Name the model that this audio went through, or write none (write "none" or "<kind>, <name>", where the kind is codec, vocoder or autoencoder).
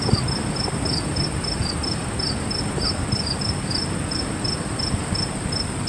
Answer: none